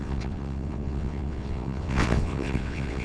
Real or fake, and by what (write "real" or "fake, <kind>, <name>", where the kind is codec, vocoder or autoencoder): fake, vocoder, WaveNeXt